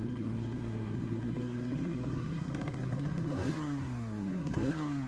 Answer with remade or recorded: remade